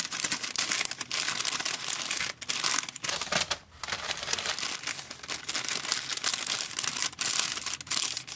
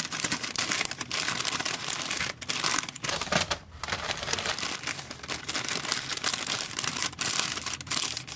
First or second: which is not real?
second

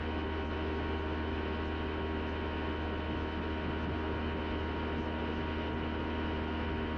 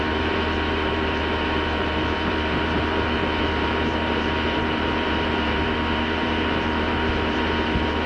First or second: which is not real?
second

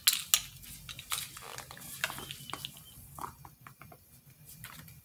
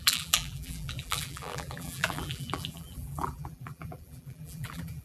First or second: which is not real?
second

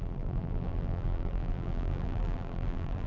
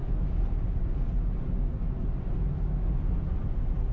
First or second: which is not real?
first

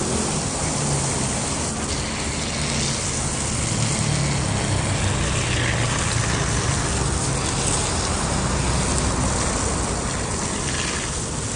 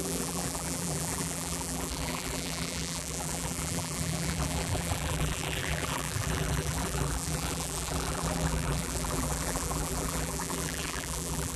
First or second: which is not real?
second